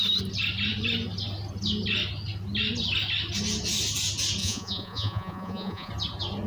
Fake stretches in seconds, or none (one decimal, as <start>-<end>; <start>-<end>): 4.4-5.9